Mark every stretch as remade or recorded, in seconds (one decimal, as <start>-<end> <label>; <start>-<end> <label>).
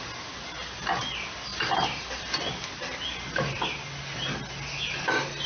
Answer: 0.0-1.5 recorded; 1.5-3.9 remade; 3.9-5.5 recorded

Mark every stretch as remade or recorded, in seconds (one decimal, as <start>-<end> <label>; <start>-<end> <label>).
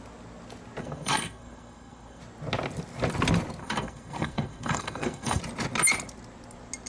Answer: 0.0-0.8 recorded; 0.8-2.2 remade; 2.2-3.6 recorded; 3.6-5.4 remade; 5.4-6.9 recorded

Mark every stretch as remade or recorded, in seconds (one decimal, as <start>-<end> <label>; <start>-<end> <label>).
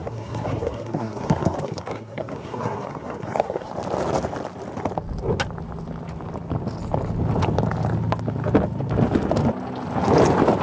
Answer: 0.0-3.7 remade; 3.7-10.6 recorded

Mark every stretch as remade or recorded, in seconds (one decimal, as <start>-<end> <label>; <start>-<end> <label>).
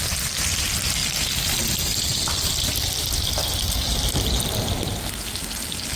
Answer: 0.0-6.0 recorded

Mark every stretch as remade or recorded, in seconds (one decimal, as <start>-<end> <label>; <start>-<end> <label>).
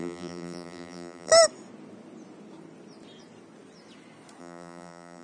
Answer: 0.0-1.3 remade; 1.3-4.4 recorded; 4.4-5.2 remade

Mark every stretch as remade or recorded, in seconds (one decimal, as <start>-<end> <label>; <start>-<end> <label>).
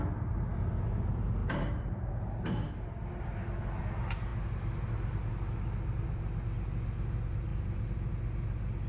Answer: 0.0-7.5 recorded; 7.5-8.1 remade; 8.1-8.9 recorded